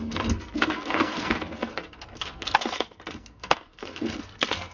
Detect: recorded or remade remade